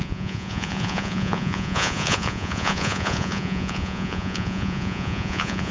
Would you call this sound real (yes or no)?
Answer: no